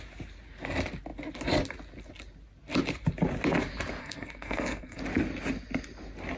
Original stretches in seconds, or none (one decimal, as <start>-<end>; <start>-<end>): 0.0-4.0; 5.0-6.4